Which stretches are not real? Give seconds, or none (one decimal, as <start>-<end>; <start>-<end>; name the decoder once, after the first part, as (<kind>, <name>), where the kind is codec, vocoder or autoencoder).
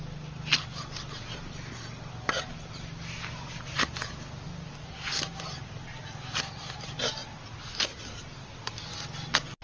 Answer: none